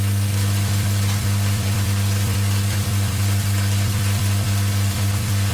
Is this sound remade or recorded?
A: remade